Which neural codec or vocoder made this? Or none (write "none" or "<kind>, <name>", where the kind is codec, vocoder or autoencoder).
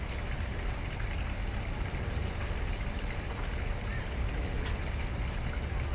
none